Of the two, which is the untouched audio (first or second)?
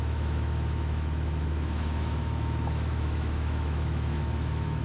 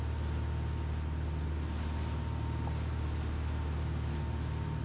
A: second